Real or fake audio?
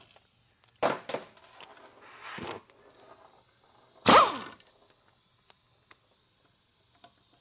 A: real